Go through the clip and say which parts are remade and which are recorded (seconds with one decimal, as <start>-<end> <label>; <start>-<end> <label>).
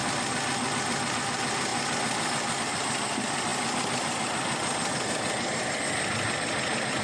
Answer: 0.0-1.2 recorded; 1.2-1.7 remade; 1.7-2.6 recorded; 2.6-3.5 remade; 3.5-7.0 recorded